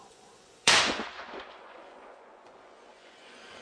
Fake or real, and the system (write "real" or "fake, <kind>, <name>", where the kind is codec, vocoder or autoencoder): fake, vocoder, Vocos